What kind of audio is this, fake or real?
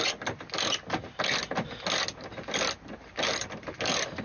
real